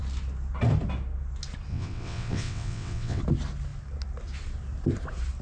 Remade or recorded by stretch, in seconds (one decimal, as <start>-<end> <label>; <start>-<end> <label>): 0.0-1.7 recorded; 1.7-3.2 remade; 3.2-5.4 recorded